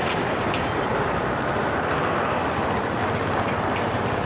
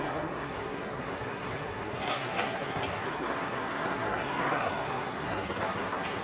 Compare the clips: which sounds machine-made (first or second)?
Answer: second